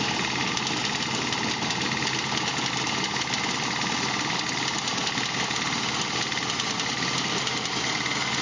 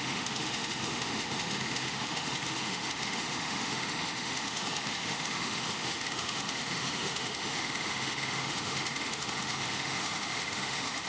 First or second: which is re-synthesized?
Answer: second